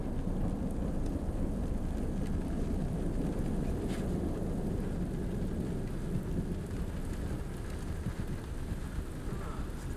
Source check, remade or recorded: recorded